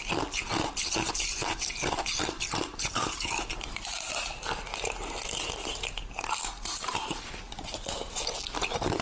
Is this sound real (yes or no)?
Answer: yes